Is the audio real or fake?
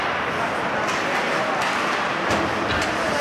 real